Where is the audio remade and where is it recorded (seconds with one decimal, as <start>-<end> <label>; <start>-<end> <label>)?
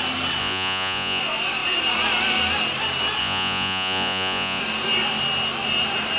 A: 0.0-0.4 recorded; 0.4-1.2 remade; 1.2-3.2 recorded; 3.2-4.6 remade; 4.6-6.2 recorded